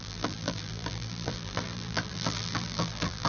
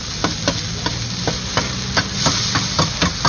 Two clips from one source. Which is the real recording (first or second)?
second